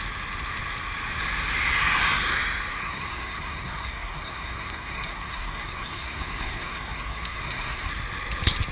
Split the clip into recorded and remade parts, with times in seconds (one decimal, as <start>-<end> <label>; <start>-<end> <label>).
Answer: 0.0-2.8 recorded; 2.8-7.9 remade; 7.9-8.7 recorded